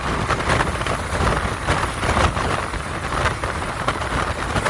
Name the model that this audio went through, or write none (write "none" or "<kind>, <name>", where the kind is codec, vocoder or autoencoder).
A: none